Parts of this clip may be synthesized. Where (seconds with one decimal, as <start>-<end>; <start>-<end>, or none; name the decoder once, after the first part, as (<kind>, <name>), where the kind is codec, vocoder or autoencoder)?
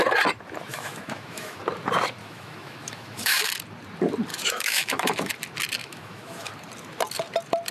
0.7-1.6 (autoencoder, DAC-VAE); 2.2-3.5; 4.3-5.3; 5.8-6.5